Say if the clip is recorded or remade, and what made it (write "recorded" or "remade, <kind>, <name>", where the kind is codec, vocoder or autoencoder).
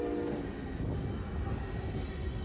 recorded